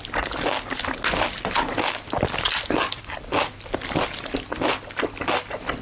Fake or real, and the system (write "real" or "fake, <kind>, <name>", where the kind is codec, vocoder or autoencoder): real